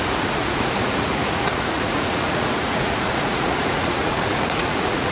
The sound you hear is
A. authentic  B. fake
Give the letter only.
B